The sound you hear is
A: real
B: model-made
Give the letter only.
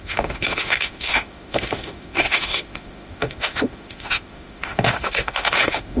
B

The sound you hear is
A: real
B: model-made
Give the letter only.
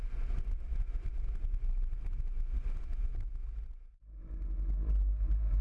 A